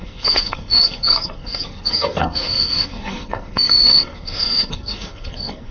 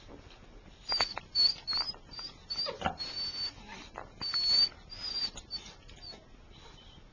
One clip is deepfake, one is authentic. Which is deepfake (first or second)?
first